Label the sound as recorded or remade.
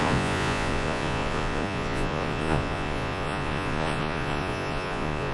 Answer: remade